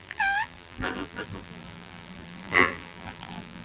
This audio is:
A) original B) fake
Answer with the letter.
B